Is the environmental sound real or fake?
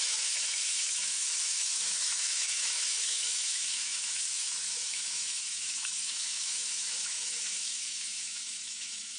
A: fake